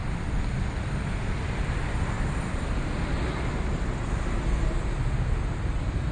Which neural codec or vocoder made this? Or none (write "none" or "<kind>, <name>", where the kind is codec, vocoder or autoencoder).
none